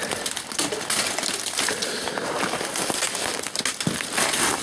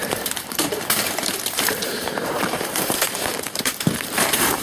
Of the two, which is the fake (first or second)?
second